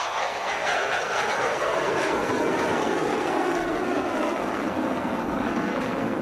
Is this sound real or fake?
fake